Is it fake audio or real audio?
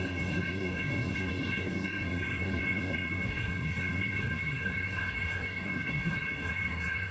fake